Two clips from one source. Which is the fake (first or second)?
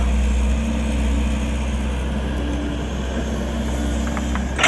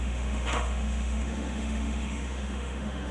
second